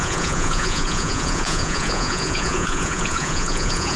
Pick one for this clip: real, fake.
fake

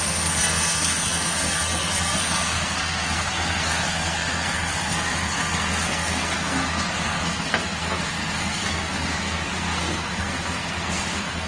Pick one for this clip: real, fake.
fake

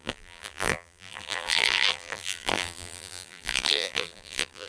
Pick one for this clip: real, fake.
fake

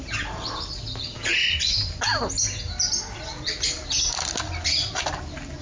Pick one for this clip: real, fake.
real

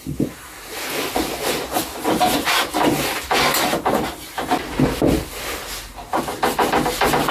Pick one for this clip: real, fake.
real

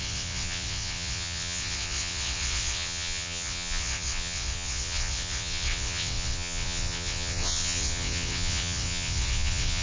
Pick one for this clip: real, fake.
fake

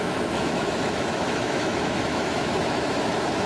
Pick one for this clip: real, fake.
fake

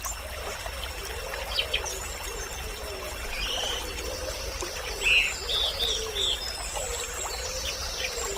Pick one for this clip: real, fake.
real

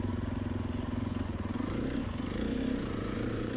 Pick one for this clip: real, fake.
fake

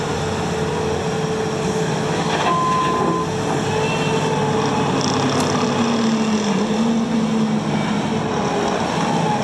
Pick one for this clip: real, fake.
real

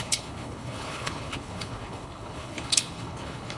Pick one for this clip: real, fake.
fake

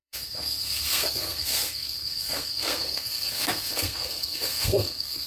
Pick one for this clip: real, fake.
fake